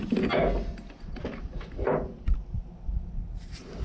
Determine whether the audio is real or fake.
real